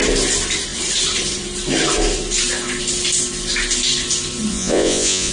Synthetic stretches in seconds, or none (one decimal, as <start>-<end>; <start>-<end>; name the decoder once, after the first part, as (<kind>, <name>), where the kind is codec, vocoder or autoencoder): 4.5-5.3 (vocoder, Vocos)